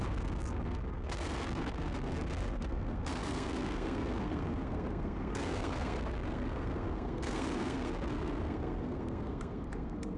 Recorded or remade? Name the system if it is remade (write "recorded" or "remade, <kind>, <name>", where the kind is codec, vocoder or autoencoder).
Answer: remade, codec, SNAC